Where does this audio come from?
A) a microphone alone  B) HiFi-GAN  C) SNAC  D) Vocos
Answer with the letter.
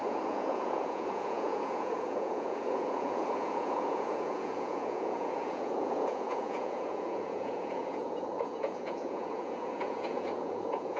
D